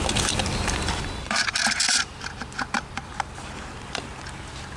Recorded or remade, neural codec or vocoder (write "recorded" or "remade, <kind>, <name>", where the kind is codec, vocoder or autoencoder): recorded